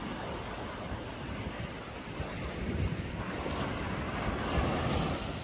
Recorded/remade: recorded